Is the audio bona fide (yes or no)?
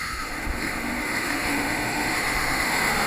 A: no